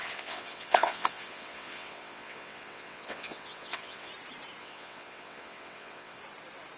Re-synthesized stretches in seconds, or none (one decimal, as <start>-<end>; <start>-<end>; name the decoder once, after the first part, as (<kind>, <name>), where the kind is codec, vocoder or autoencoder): 0.0-4.1 (vocoder, WaveNeXt); 4.6-6.2